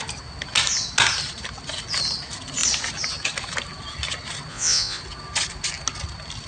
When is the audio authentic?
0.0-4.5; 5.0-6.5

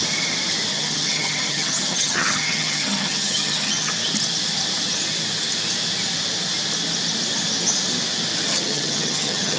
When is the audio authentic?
0.0-0.7; 3.9-8.5

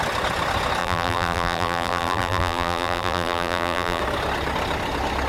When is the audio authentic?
0.0-0.8; 4.0-5.3

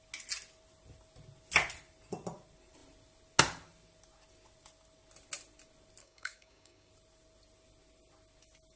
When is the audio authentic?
0.0-6.0; 6.9-8.8

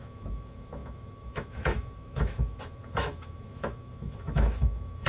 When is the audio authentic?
none